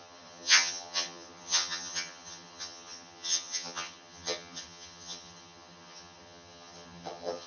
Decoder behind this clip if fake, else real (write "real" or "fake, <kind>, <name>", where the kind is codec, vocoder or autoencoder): fake, vocoder, HiFi-GAN